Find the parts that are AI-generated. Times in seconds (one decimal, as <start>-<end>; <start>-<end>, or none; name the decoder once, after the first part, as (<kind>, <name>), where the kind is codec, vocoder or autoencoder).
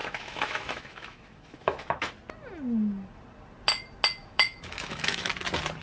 0.0-2.1 (autoencoder, DAC-VAE); 4.2-5.3